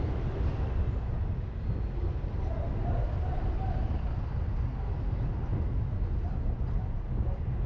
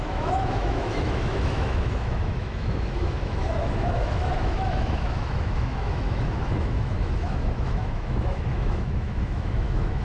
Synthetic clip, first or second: second